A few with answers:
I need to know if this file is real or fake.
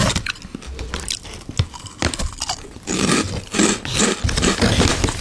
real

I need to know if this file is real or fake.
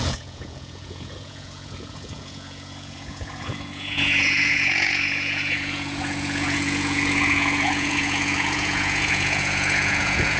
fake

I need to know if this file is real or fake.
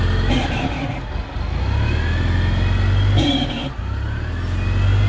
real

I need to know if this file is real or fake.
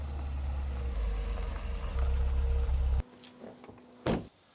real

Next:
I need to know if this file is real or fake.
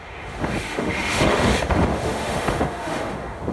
fake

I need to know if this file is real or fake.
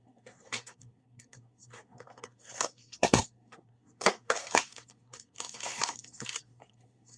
fake